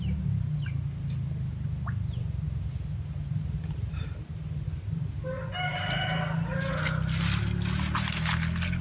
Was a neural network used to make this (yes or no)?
no